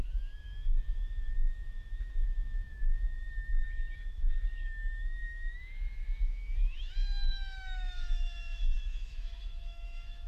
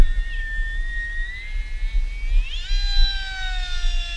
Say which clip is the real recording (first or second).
second